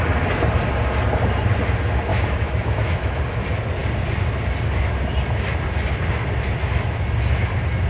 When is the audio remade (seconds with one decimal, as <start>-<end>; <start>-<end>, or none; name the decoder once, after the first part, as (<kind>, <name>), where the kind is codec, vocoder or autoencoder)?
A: 2.1-3.2 (autoencoder, DAC-VAE)